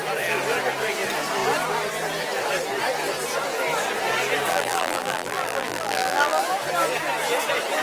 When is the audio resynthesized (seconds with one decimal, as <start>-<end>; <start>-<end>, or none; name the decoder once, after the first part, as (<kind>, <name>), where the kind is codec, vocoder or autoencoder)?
4.5-6.4 (vocoder, BigVGAN v2)